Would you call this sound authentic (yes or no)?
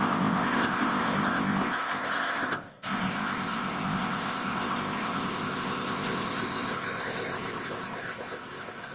no